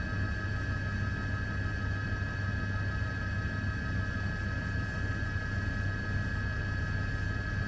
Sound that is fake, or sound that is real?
real